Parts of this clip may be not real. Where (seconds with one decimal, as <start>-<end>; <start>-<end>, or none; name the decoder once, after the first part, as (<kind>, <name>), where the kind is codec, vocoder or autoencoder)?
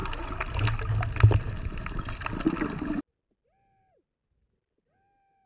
none